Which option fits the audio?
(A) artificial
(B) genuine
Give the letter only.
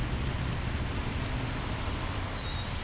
B